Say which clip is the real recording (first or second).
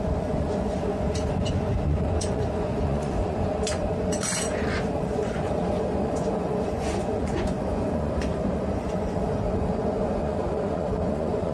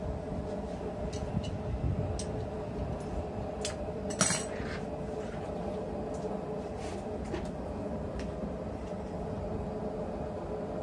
second